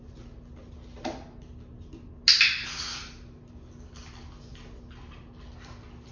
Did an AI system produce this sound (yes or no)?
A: no